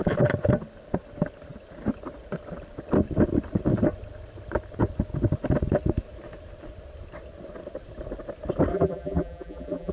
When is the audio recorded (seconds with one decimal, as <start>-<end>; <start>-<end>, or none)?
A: 0.0-8.7